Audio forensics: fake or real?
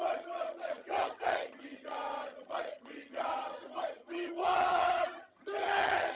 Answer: fake